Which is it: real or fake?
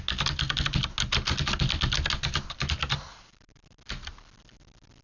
real